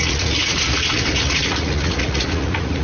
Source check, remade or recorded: remade